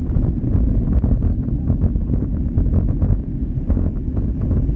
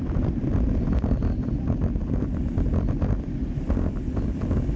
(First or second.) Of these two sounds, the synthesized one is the second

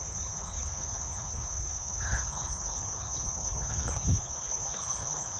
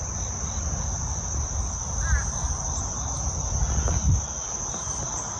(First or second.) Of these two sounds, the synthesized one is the first